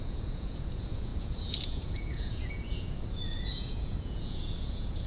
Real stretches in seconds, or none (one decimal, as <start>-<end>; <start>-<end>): none